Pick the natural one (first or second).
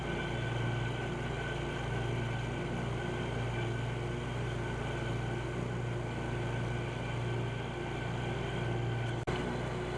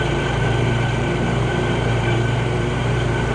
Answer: first